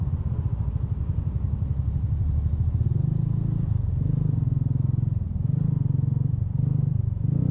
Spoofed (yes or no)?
no